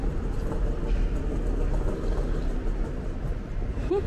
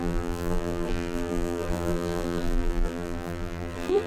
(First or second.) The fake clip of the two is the second